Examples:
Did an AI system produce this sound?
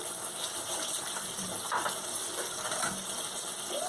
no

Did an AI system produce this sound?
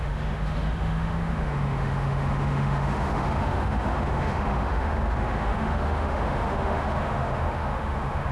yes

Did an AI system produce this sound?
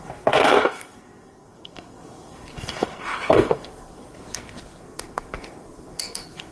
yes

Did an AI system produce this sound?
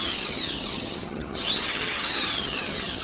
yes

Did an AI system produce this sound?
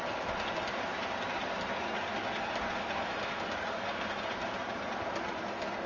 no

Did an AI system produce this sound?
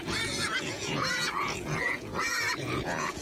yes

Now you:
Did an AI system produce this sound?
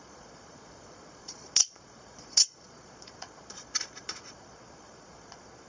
yes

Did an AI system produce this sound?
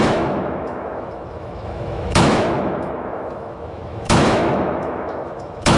yes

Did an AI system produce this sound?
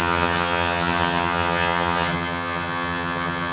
yes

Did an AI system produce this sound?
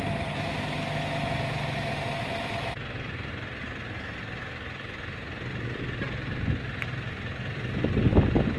no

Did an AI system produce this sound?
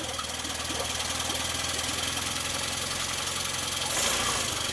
no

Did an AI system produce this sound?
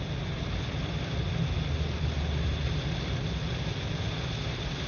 no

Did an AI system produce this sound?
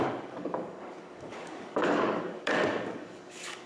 yes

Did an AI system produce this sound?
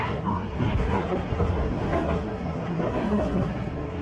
yes